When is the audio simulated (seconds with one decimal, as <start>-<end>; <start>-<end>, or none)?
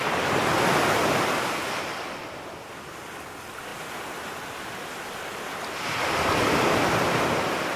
none